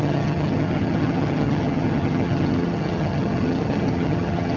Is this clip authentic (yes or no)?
no